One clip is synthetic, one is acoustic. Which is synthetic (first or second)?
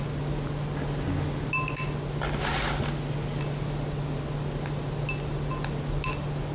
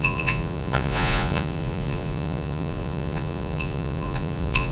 second